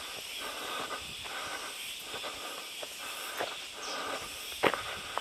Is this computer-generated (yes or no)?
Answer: no